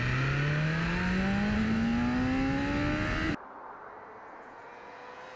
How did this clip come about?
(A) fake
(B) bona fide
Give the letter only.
B